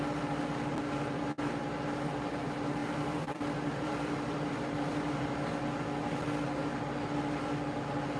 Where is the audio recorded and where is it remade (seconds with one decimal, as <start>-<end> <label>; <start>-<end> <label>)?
0.0-2.8 recorded; 2.8-5.5 remade; 5.5-8.2 recorded